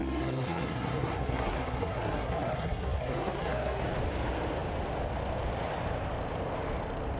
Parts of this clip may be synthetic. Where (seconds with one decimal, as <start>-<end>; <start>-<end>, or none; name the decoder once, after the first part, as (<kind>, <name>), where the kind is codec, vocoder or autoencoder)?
0.0-3.8 (codec, SNAC)